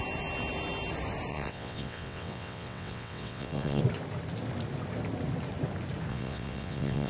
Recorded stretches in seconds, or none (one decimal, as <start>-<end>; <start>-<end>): 0.0-1.3; 3.8-6.1